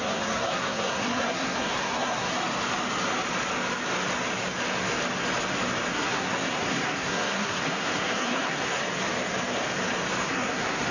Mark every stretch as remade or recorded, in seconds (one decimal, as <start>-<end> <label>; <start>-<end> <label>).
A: 0.0-2.3 remade; 2.3-5.9 recorded; 5.9-8.8 remade; 8.8-10.3 recorded; 10.3-10.9 remade